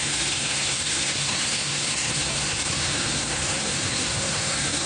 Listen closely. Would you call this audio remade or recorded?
remade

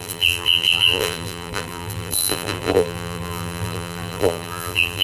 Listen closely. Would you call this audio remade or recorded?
remade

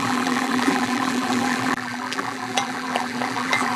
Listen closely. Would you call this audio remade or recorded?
remade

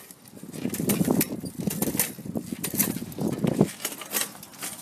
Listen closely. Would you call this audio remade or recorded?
recorded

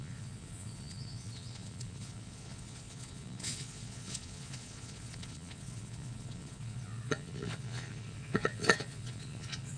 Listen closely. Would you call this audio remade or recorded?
remade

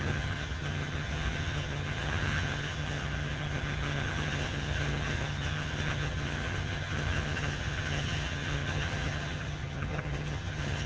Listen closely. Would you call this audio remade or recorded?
remade